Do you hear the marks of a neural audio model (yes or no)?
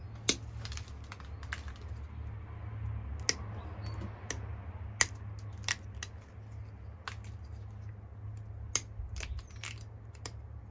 no